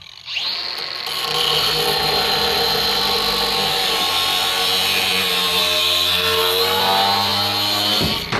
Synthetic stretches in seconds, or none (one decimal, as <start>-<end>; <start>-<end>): 5.6-6.8